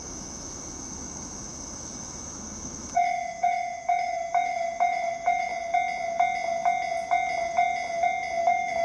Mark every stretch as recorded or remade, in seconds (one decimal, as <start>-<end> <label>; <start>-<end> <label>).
0.0-5.5 remade; 5.5-8.4 recorded; 8.4-8.8 remade